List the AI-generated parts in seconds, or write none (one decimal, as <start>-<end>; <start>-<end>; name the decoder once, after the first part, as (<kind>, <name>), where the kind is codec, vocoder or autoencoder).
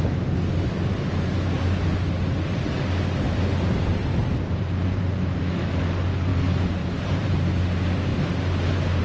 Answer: 4.0-5.4 (vocoder, BigVGAN v2); 6.3-7.3